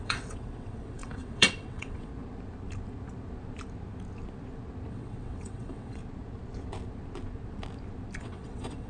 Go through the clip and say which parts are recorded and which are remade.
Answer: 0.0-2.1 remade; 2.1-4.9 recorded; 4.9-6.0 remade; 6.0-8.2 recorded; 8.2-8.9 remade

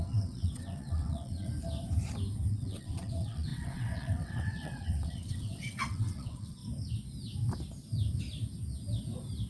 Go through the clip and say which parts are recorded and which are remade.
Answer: 0.0-1.5 remade; 1.5-2.5 recorded; 2.5-6.6 remade; 6.6-9.5 recorded

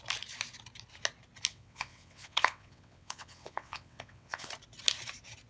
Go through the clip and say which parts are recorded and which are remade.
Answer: 0.0-1.5 recorded; 1.5-4.5 remade; 4.5-5.5 recorded

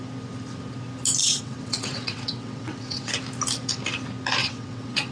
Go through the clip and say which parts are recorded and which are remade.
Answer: 0.0-1.2 recorded; 1.2-3.1 remade; 3.1-4.4 recorded; 4.4-5.1 remade

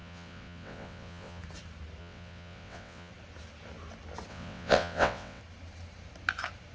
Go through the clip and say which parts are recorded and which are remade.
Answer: 0.0-1.4 remade; 1.4-2.0 recorded; 2.0-3.1 remade; 3.1-4.3 recorded; 4.3-5.4 remade; 5.4-6.7 recorded

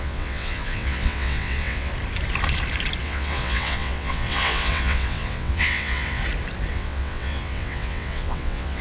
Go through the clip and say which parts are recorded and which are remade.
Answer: 0.0-1.9 remade; 1.9-3.0 recorded; 3.0-6.2 remade; 6.2-6.7 recorded; 6.7-8.8 remade

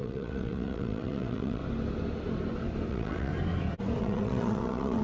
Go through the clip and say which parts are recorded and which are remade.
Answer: 0.0-1.6 remade; 1.6-2.9 recorded; 2.9-3.3 remade; 3.3-4.0 recorded; 4.0-5.0 remade

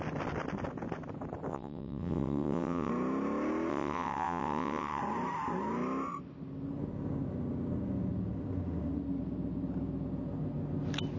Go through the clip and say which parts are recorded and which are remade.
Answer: 0.0-1.5 recorded; 1.5-2.9 remade; 2.9-3.7 recorded; 3.7-5.0 remade; 5.0-11.2 recorded